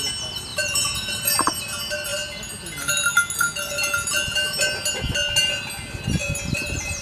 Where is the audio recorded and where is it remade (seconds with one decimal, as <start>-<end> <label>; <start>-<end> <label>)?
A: 0.0-0.5 recorded; 0.5-1.6 remade; 1.6-6.2 recorded; 6.2-7.0 remade